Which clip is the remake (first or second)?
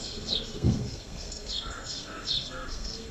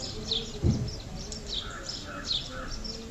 first